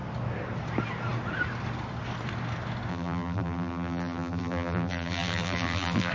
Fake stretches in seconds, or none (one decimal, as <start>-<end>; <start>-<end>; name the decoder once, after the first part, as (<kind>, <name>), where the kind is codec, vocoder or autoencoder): 2.9-6.1 (vocoder, BigVGAN v2)